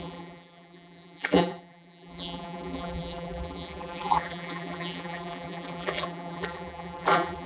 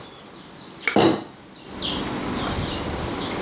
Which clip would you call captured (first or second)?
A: second